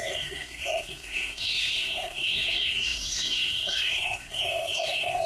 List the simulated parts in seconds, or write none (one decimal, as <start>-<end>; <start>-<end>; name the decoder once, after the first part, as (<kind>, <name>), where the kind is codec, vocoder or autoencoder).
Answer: 0.0-5.3 (codec, SNAC)